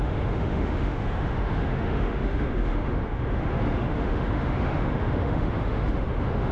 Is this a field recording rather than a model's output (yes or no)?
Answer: no